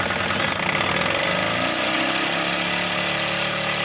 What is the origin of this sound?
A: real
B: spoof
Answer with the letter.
A